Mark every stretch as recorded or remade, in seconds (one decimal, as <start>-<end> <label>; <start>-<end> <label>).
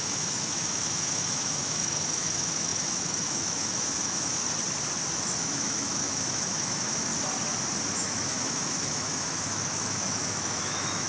0.0-4.4 remade; 4.4-5.4 recorded; 5.4-7.1 remade; 7.1-7.9 recorded; 7.9-11.1 remade